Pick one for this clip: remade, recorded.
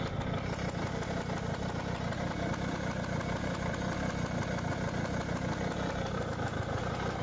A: recorded